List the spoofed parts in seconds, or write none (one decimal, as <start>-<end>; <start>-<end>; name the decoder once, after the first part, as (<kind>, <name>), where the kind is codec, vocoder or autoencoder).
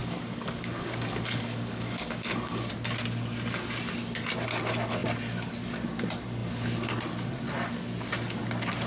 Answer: 0.0-2.7 (codec, DAC)